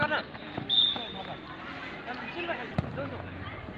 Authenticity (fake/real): real